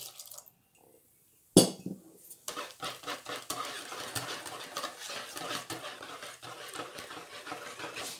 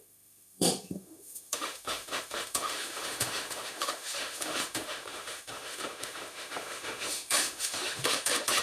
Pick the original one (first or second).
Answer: first